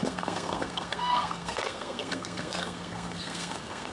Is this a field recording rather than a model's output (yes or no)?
no